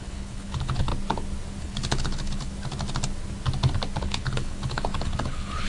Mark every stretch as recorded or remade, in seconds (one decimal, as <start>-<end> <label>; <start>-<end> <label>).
0.0-0.9 remade; 0.9-1.6 recorded; 1.6-2.5 remade; 2.5-4.0 recorded; 4.0-5.7 remade